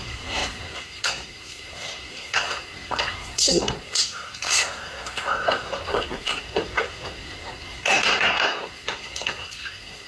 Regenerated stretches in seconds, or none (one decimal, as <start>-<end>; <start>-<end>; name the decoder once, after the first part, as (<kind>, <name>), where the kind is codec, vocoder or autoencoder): 0.0-10.1 (codec, SNAC)